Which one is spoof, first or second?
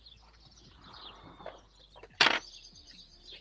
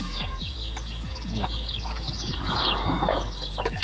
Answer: second